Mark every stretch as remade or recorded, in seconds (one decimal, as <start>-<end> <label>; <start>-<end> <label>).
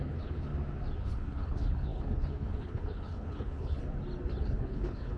0.0-0.5 remade; 0.5-1.0 recorded; 1.0-3.8 remade; 3.8-4.4 recorded; 4.4-5.2 remade